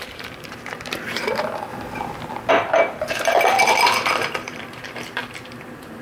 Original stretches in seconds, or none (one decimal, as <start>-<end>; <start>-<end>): 1.7-2.5